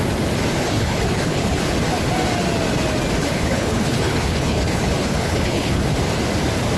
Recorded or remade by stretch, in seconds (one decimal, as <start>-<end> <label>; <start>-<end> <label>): 0.0-0.6 recorded; 0.6-1.6 remade; 1.6-3.2 recorded; 3.2-5.8 remade; 5.8-6.8 recorded